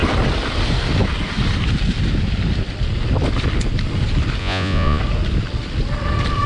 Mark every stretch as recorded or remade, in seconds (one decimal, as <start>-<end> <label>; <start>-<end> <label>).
0.0-4.4 recorded; 4.4-5.0 remade; 5.0-6.5 recorded

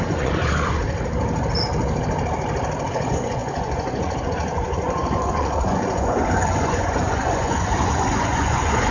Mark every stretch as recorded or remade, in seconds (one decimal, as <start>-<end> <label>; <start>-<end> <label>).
0.0-0.8 remade; 0.8-2.9 recorded; 2.9-8.9 remade

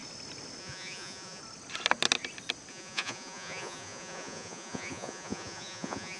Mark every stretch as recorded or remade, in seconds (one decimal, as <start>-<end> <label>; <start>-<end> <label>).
0.0-0.6 recorded; 0.6-1.4 remade; 1.4-2.7 recorded; 2.7-6.2 remade

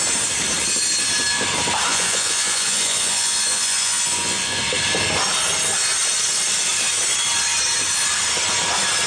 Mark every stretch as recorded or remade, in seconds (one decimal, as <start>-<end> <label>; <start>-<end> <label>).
0.0-1.9 recorded; 1.9-4.6 remade; 4.6-9.1 recorded

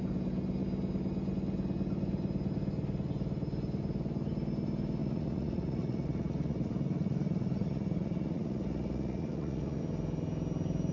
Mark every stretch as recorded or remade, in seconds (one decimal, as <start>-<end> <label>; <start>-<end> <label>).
0.0-5.0 recorded; 5.0-9.8 remade; 9.8-10.9 recorded

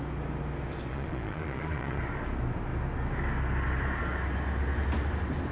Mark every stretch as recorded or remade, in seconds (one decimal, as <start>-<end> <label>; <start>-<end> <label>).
0.0-0.9 recorded; 0.9-2.0 remade; 2.0-5.5 recorded